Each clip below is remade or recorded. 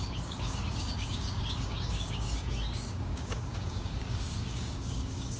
remade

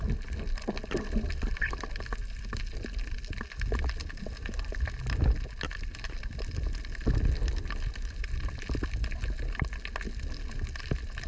recorded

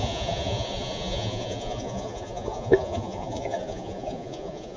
remade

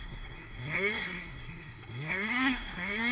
remade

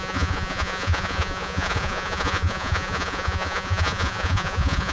remade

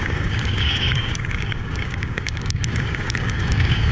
remade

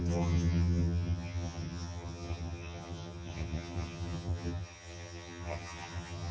remade